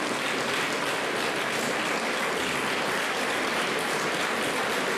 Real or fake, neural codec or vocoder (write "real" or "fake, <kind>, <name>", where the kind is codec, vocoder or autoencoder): real